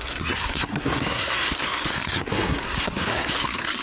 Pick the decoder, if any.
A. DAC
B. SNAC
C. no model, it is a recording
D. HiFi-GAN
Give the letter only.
B